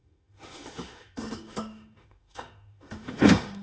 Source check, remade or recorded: remade